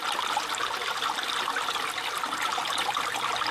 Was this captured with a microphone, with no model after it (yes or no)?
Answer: yes